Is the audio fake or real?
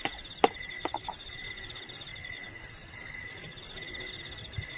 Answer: fake